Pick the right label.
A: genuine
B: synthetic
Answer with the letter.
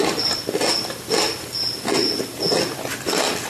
A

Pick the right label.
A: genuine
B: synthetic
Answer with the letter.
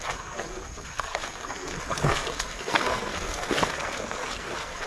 B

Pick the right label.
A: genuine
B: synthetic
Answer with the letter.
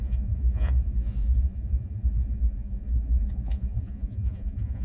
B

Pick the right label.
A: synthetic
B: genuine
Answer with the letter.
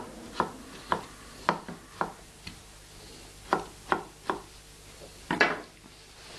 B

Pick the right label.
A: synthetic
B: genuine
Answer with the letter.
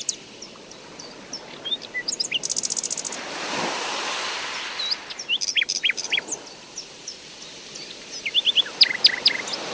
B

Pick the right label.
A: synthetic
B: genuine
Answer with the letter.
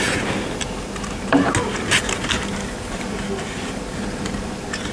B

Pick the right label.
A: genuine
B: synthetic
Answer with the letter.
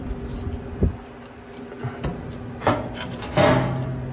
A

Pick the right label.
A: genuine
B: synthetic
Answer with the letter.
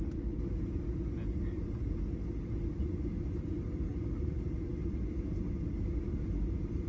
A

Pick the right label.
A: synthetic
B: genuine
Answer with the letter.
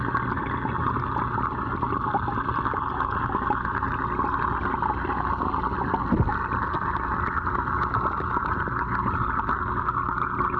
B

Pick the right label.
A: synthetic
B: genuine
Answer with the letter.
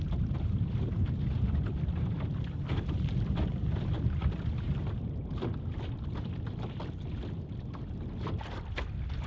B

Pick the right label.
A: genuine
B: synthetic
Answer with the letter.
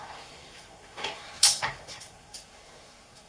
B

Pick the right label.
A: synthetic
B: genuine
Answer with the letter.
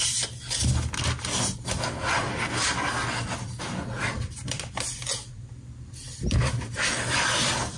B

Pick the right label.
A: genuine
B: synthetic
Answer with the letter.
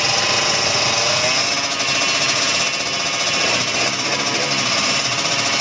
A